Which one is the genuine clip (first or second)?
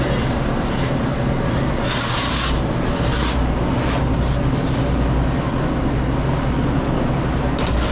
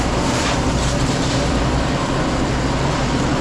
first